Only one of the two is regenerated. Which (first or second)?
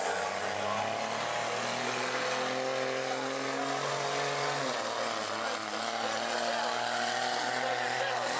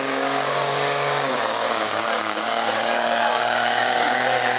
second